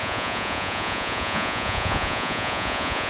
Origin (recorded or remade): remade